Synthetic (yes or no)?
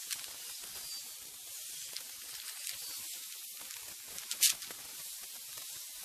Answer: no